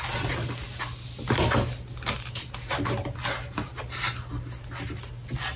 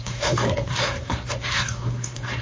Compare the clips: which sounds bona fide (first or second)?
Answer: first